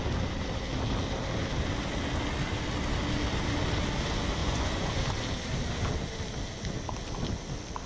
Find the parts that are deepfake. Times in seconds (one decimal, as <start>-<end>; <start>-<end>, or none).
4.4-5.0